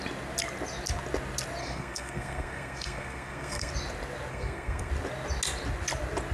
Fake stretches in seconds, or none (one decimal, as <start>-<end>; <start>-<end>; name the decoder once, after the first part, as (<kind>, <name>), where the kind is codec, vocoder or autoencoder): 1.6-3.7 (codec, SNAC); 4.3-4.9